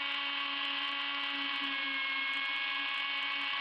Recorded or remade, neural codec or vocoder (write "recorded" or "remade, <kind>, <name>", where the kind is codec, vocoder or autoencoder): recorded